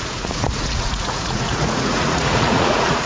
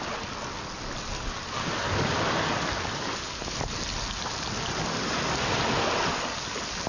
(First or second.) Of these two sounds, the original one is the second